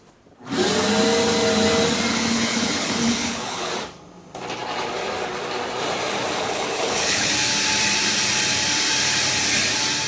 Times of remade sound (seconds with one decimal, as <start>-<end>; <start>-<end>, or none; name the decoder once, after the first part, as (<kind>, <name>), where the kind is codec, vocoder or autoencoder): 2.1-3.7 (codec, HILCodec); 6.4-7.3